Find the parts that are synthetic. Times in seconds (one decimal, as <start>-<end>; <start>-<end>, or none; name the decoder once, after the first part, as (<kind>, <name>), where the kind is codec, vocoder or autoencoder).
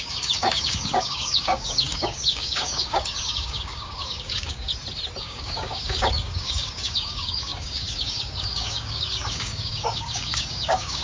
0.0-4.7 (codec, DAC); 5.2-11.0